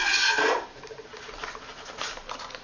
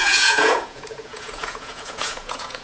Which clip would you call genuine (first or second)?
first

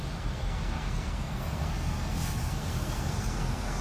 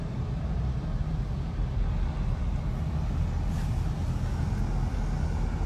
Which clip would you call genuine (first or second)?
second